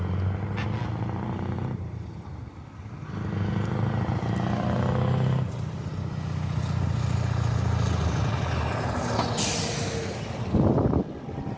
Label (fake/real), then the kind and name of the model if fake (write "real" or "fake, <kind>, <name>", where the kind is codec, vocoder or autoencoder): real